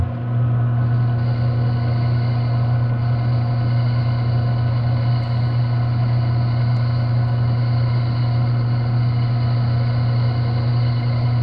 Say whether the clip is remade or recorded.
recorded